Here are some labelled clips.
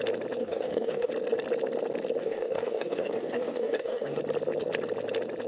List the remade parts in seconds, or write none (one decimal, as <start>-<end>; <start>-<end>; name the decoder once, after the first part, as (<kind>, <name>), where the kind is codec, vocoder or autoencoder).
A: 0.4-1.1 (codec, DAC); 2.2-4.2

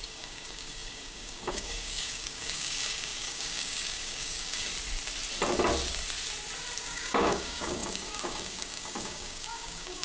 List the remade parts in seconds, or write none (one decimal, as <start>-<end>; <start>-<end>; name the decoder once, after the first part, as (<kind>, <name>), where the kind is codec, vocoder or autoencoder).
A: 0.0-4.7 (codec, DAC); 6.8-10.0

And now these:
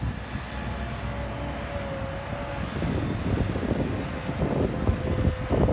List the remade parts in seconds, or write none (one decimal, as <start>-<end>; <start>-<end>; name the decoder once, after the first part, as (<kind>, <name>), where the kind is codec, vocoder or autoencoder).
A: 2.5-3.0 (codec, DAC)

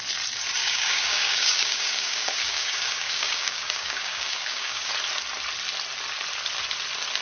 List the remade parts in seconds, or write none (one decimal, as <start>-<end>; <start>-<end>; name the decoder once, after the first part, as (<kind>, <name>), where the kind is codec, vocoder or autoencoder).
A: 0.6-4.9 (codec, DAC)

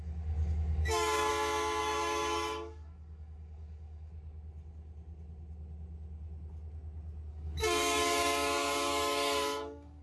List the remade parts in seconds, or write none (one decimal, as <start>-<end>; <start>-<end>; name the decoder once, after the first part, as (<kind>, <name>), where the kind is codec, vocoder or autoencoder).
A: 0.0-1.3 (codec, DAC); 1.8-4.1; 7.3-10.0

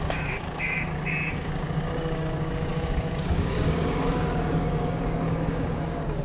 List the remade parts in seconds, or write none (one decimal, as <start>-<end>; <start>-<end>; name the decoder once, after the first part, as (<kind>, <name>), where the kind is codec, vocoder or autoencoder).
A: 0.0-6.2 (codec, DAC)

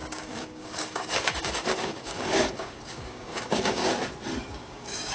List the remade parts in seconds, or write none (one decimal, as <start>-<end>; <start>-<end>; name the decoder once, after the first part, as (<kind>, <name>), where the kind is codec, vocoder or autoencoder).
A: 0.0-3.8 (codec, DAC); 4.5-5.1

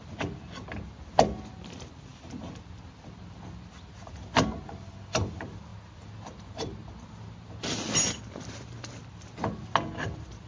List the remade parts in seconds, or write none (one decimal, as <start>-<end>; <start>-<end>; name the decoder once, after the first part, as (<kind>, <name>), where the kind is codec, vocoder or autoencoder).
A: none